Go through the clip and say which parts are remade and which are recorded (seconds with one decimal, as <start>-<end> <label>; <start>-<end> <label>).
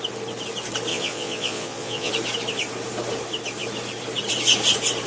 0.0-0.9 recorded; 0.9-2.1 remade; 2.1-5.1 recorded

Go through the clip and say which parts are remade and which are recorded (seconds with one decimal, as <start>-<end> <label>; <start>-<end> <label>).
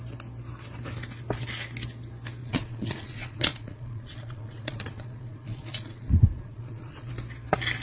0.0-2.4 recorded; 2.4-7.1 remade; 7.1-7.8 recorded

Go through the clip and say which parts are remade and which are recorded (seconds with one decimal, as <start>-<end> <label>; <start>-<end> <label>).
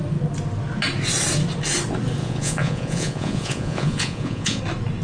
0.0-2.2 recorded; 2.2-4.6 remade; 4.6-5.0 recorded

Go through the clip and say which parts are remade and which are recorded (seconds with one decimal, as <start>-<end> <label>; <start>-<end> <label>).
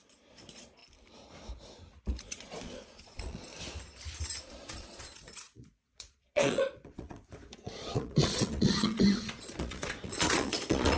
0.0-0.8 remade; 0.8-2.2 recorded; 2.2-3.5 remade; 3.5-4.5 recorded; 4.5-11.0 remade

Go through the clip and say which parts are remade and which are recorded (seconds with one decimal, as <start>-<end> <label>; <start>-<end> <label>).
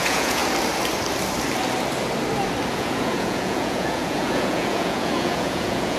0.0-0.4 remade; 0.4-2.7 recorded; 2.7-6.0 remade